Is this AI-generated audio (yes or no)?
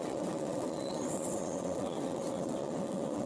yes